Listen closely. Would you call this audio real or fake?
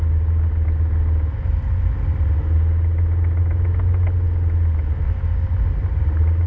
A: real